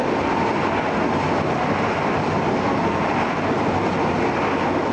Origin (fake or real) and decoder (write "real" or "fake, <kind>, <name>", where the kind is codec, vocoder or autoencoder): real